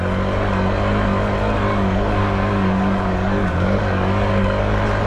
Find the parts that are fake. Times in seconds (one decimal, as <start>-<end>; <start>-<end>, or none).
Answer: 1.7-4.6